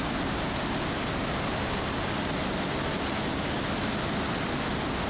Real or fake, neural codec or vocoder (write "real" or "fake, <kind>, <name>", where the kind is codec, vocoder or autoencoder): real